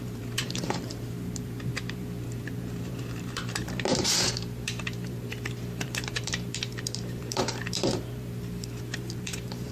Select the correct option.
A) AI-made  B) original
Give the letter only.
A